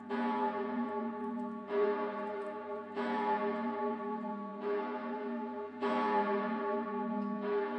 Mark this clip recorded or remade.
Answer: remade